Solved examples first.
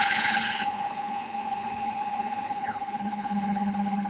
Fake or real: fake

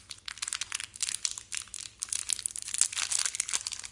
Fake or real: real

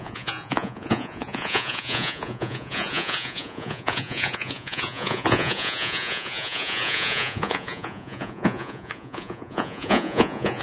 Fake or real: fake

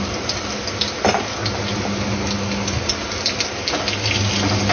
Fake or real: real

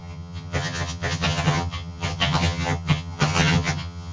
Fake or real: fake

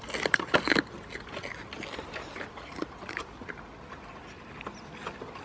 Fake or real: real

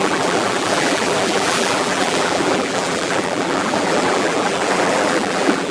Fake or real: fake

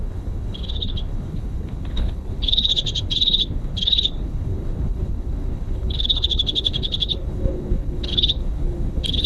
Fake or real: fake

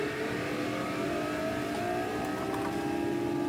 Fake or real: fake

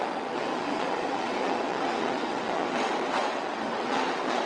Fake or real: fake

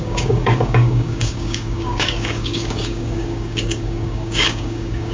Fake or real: fake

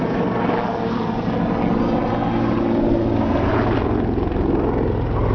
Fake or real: real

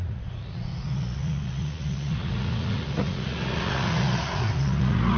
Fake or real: fake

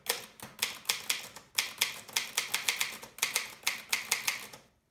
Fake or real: real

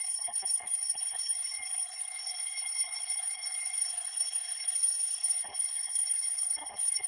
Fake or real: fake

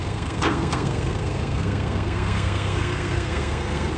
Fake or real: fake